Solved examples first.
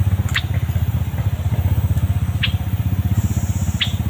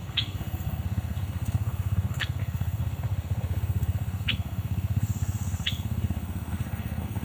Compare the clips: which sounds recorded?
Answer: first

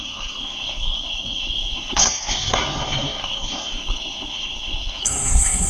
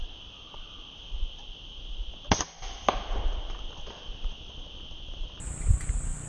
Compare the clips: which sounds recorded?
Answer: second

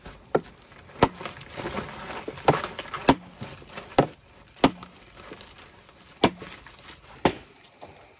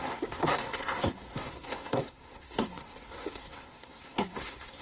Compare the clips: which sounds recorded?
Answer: first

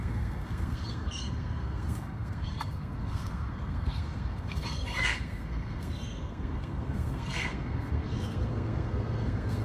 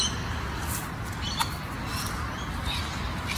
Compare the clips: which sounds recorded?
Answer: second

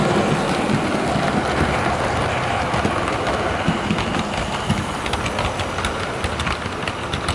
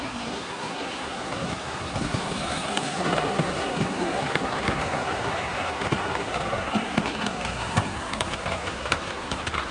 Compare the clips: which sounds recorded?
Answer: first